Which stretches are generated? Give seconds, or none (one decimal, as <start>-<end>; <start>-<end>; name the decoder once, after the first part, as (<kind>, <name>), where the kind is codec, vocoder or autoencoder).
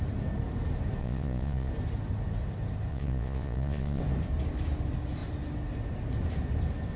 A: 1.0-1.7 (vocoder, Vocos); 2.9-4.0